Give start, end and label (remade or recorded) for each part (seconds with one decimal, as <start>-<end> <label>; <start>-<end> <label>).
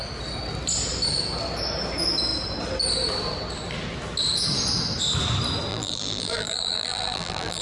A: 0.0-5.7 recorded; 5.7-7.6 remade